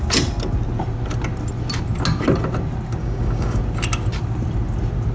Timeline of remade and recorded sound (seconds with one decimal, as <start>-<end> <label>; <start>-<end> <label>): 0.0-3.0 recorded; 3.0-3.6 remade; 3.6-5.1 recorded